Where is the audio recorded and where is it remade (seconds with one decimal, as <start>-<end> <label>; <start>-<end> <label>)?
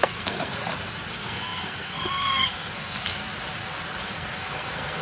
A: 0.0-0.6 remade; 0.6-1.1 recorded; 1.1-3.2 remade; 3.2-4.0 recorded; 4.0-5.0 remade